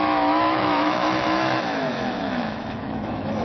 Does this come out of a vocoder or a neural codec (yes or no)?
yes